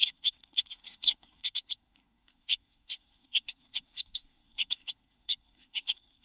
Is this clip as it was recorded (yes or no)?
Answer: no